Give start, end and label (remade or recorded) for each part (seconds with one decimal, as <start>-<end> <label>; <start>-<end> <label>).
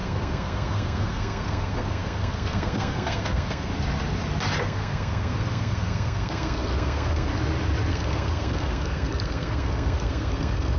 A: 0.0-3.7 remade; 3.7-4.6 recorded; 4.6-7.3 remade; 7.3-7.9 recorded; 7.9-10.8 remade